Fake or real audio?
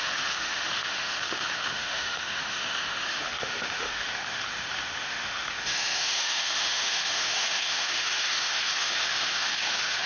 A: fake